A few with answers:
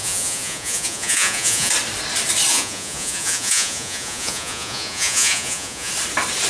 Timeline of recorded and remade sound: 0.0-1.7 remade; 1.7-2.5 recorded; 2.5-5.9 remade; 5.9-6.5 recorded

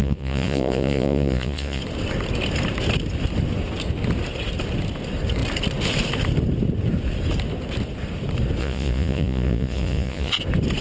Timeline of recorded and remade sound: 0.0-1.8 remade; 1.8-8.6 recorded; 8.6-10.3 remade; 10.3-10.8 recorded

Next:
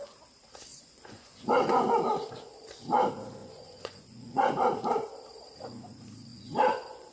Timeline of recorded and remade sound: 0.0-0.7 recorded; 0.7-1.9 remade; 1.9-3.4 recorded; 3.4-4.5 remade; 4.5-6.3 recorded; 6.3-7.1 remade

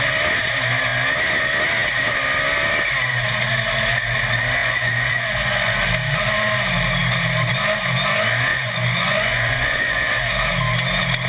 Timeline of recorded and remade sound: 0.0-4.6 recorded; 4.6-5.7 remade; 5.7-8.5 recorded; 8.5-10.1 remade; 10.1-11.3 recorded

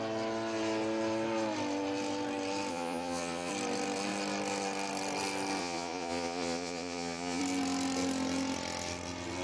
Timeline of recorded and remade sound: 0.0-2.7 recorded; 2.7-3.5 remade; 3.5-5.6 recorded; 5.6-7.4 remade; 7.4-9.4 recorded

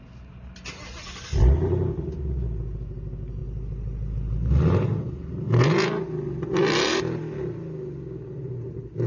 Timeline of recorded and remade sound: 0.0-9.1 recorded